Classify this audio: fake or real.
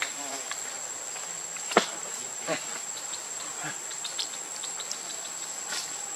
real